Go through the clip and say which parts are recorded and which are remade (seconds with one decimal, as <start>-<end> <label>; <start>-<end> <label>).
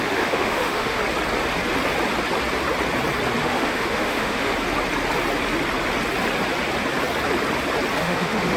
0.0-1.0 remade; 1.0-3.4 recorded; 3.4-4.5 remade; 4.5-8.0 recorded; 8.0-8.6 remade